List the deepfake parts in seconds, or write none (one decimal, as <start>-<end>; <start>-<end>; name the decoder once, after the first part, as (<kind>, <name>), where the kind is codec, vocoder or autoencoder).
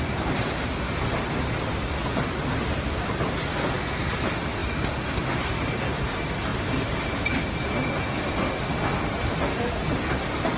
none